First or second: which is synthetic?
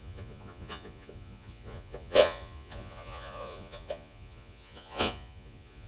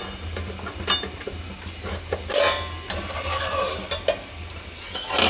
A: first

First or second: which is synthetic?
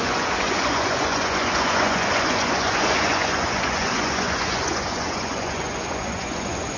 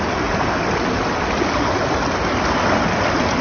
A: first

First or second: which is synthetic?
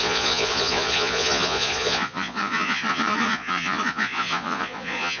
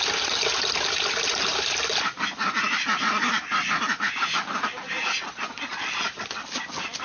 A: first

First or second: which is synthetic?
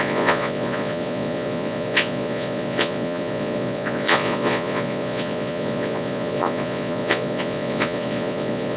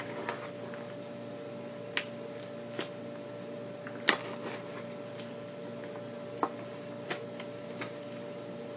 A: first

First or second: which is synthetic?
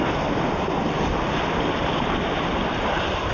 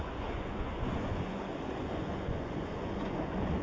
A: second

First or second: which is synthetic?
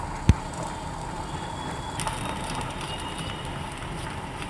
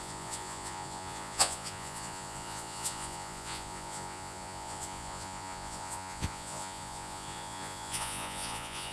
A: second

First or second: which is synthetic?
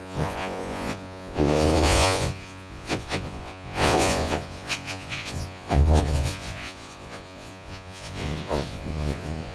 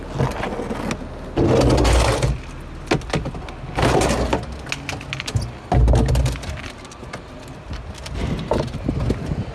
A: first